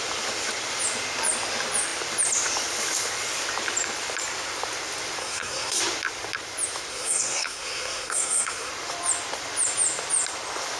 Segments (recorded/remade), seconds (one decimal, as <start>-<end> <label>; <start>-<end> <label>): 0.0-5.2 recorded; 5.2-5.8 remade; 5.8-6.9 recorded; 6.9-8.7 remade; 8.7-10.8 recorded